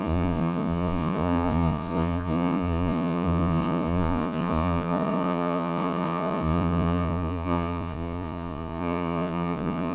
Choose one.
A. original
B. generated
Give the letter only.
B